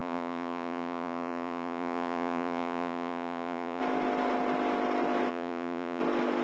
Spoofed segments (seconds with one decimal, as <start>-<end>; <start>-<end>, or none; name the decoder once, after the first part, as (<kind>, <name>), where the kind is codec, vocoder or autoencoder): 0.0-3.8 (vocoder, Vocos); 5.3-6.0